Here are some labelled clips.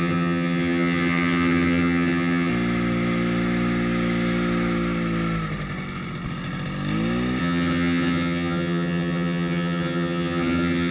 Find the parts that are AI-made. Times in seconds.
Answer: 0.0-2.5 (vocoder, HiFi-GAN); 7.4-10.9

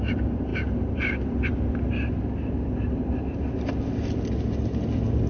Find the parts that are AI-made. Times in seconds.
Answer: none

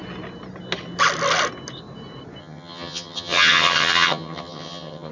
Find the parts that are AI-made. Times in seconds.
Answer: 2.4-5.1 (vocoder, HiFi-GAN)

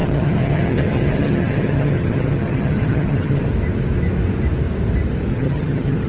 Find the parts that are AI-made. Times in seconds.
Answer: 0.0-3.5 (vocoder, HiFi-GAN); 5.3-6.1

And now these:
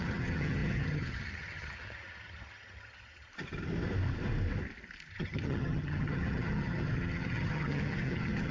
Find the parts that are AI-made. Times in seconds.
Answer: 0.0-3.3 (vocoder, HiFi-GAN); 5.1-8.5

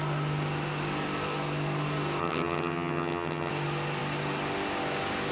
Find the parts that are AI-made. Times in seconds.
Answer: 2.2-3.5 (vocoder, HiFi-GAN)